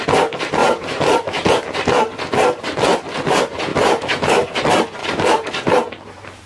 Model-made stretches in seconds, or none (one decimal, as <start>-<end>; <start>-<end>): 0.6-1.5; 5.0-6.5